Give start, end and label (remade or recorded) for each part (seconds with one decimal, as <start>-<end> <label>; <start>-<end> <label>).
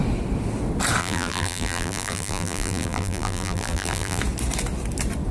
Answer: 0.0-1.0 recorded; 1.0-4.2 remade; 4.2-5.3 recorded